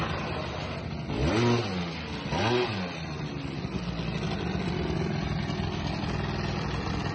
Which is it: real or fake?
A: real